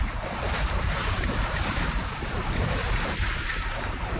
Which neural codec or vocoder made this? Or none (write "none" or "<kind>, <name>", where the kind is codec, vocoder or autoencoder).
vocoder, BigVGAN v2